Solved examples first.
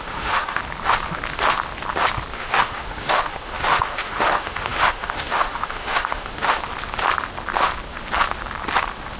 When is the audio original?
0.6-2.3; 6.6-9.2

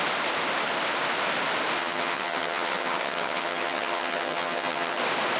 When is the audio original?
0.0-1.8; 5.0-5.4

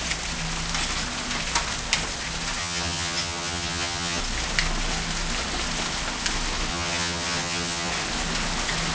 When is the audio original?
0.0-2.6; 4.2-6.7; 7.9-8.9

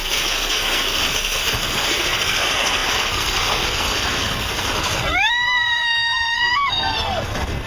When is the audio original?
none

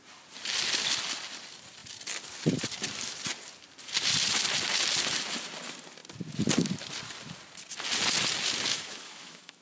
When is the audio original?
0.0-8.7